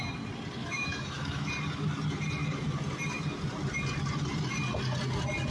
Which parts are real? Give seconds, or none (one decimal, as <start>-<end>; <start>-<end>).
0.0-0.6; 1.5-5.5